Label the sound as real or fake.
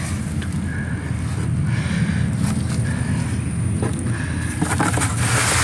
real